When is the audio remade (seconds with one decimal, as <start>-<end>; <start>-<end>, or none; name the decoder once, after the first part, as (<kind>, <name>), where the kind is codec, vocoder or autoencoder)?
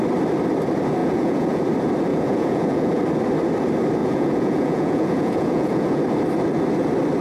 1.0-1.6 (vocoder, Vocos); 2.1-3.0; 4.0-6.0